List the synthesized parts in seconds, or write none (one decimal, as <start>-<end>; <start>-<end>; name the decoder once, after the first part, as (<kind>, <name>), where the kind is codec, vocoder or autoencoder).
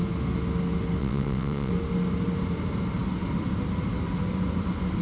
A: 1.0-1.7 (vocoder, WaveNeXt)